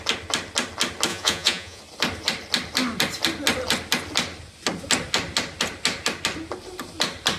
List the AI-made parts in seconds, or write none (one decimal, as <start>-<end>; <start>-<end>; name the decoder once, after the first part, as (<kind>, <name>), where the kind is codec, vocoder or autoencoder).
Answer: 1.1-1.8 (vocoder, Vocos)